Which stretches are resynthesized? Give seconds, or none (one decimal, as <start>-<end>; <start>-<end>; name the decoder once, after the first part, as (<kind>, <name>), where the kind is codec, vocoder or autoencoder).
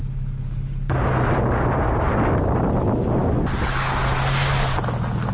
none